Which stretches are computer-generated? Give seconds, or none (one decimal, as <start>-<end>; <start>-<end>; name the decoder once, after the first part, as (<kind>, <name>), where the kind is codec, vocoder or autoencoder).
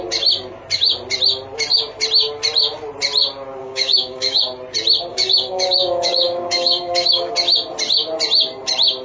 3.6-4.4 (codec, DAC); 5.1-7.3